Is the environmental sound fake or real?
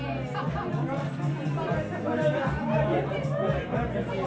real